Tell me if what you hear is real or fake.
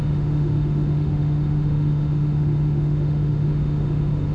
fake